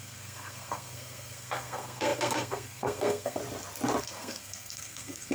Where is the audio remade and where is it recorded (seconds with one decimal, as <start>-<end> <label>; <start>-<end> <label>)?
0.0-3.4 remade; 3.4-4.0 recorded; 4.0-5.3 remade